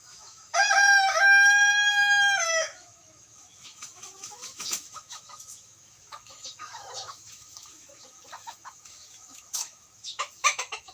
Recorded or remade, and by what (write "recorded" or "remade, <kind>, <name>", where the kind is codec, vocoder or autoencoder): remade, autoencoder, DAC-VAE